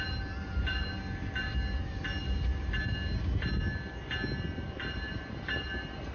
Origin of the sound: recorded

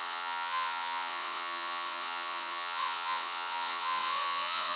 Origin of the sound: remade